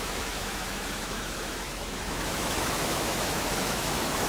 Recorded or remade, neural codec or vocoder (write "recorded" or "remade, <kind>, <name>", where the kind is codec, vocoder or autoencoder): remade, autoencoder, DAC-VAE